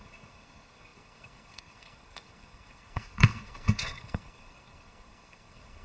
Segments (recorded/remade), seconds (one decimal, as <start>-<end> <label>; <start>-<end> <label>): 0.0-5.8 remade